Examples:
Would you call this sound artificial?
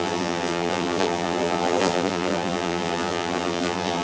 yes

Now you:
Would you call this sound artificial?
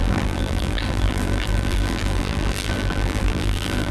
yes